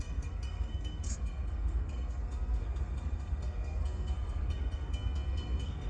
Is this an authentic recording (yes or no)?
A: no